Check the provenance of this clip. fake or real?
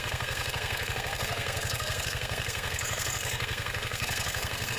fake